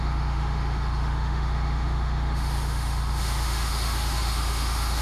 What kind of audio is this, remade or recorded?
remade